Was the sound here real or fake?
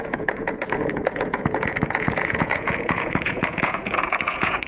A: fake